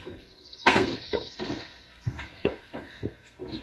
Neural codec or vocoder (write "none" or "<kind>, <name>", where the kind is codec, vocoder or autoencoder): codec, SNAC